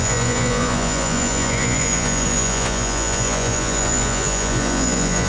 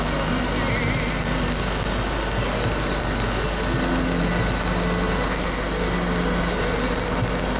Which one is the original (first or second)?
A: second